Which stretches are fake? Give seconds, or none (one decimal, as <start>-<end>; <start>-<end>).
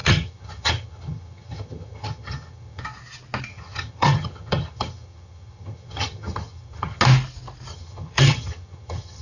0.0-2.8; 3.5-7.0; 7.7-9.2